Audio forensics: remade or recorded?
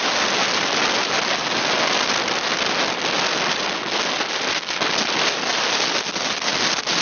recorded